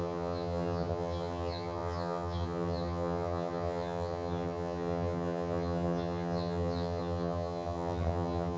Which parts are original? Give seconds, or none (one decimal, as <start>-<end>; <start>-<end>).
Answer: none